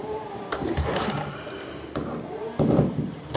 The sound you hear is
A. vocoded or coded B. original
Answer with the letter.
A